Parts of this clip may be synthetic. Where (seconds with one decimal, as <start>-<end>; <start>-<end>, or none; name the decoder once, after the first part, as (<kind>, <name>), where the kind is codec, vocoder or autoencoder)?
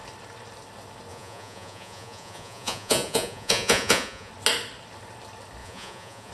1.1-4.3 (vocoder, Vocos); 5.6-6.3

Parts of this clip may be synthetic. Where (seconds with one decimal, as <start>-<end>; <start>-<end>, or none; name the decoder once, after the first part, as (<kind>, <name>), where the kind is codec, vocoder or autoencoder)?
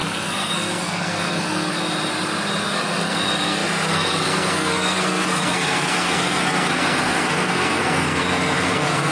0.0-1.7 (codec, SNAC); 2.6-9.1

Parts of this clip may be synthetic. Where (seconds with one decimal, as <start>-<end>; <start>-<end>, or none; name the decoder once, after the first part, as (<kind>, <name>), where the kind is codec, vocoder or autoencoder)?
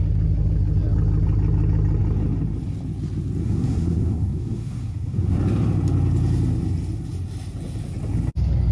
3.4-5.4 (codec, SNAC)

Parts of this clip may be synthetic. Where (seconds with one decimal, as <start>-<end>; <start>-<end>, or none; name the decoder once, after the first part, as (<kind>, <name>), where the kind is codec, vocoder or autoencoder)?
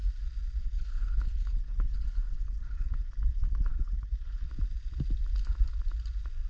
0.6-4.5 (codec, HILCodec)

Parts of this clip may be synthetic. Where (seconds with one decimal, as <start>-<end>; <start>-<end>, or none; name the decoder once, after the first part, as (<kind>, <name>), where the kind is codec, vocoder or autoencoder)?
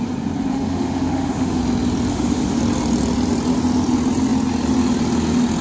0.5-1.6 (autoencoder, DAC-VAE); 2.1-2.6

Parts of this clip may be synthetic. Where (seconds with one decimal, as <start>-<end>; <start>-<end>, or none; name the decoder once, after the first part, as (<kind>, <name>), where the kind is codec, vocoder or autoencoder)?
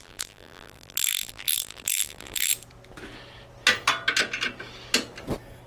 0.0-2.5 (vocoder, BigVGAN v2)